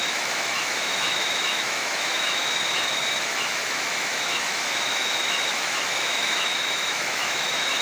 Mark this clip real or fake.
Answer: fake